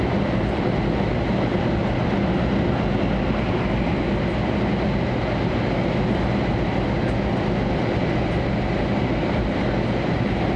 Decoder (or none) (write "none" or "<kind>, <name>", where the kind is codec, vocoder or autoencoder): none